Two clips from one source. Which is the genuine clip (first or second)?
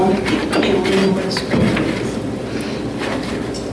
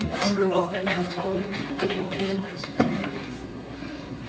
first